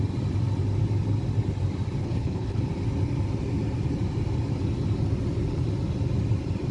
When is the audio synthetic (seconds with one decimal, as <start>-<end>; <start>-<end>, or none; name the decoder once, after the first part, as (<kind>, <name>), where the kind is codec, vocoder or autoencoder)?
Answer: 2.0-2.6 (codec, HILCodec)